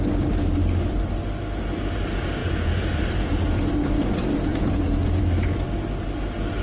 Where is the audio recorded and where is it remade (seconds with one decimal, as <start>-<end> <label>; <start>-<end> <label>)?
0.0-2.4 recorded; 2.4-3.6 remade; 3.6-4.5 recorded; 4.5-5.2 remade; 5.2-6.6 recorded

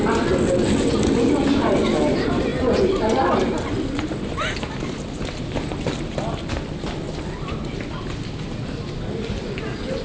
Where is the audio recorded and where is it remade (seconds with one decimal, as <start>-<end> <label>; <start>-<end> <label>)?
0.0-10.0 recorded

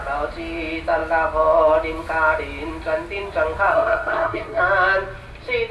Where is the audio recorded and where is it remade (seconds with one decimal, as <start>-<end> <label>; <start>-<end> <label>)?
0.0-3.7 recorded; 3.7-4.6 remade; 4.6-5.7 recorded

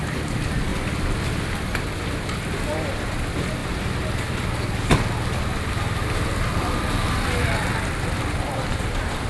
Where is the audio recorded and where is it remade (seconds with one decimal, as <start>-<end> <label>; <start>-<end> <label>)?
0.0-9.3 recorded